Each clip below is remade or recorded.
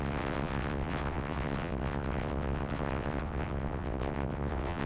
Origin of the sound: remade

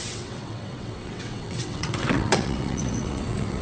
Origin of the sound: remade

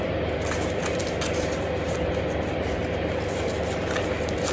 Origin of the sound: recorded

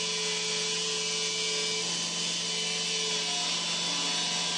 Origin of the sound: recorded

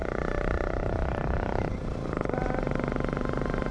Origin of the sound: recorded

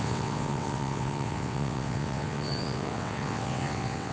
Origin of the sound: remade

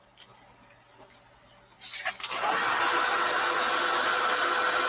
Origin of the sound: recorded